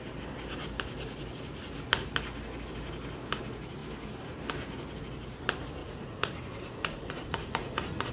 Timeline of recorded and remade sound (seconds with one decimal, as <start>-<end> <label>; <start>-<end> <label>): 0.0-5.8 recorded; 5.8-8.1 remade